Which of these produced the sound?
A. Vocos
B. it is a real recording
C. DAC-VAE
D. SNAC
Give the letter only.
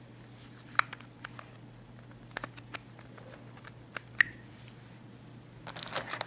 B